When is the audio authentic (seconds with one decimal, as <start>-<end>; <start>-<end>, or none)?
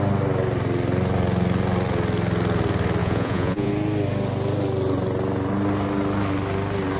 0.0-3.0; 3.7-7.0